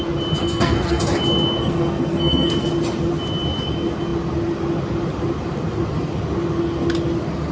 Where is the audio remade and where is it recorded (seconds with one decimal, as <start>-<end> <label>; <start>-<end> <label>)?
0.0-0.4 recorded; 0.4-1.0 remade; 1.0-1.6 recorded; 1.6-2.7 remade; 2.7-7.5 recorded